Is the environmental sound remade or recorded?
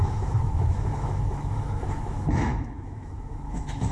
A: remade